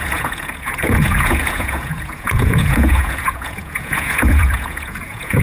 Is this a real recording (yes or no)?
no